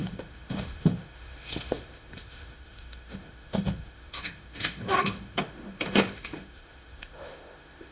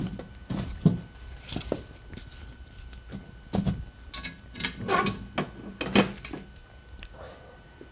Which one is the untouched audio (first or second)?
second